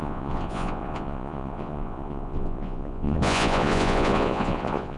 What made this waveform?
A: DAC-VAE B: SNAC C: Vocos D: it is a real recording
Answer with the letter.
C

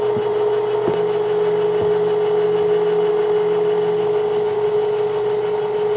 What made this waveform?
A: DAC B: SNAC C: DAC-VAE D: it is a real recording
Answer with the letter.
D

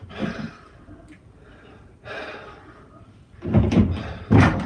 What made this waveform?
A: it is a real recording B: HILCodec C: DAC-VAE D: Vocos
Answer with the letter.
A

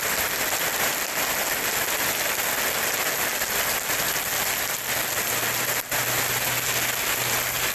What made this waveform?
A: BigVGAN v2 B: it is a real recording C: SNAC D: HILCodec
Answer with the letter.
B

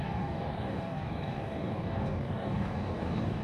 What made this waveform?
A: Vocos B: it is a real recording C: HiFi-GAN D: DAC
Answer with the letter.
D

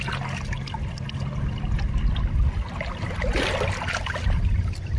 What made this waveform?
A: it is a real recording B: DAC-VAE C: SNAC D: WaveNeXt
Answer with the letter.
A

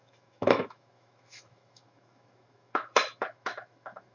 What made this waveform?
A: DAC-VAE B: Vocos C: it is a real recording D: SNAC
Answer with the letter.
A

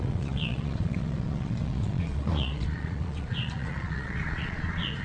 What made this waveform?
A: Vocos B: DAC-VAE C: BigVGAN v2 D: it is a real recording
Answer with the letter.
A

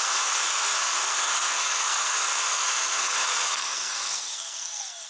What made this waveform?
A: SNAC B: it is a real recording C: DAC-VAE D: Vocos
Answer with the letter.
A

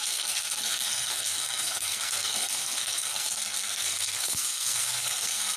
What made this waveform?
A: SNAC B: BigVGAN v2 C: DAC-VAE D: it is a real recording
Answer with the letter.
A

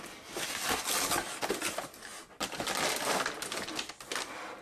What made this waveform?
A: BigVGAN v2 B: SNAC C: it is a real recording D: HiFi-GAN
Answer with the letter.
C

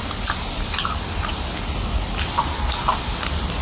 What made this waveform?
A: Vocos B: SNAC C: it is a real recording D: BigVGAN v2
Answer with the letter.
C